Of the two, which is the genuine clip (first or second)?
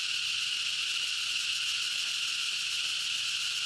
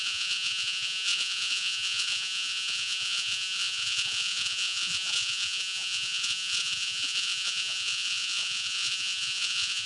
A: first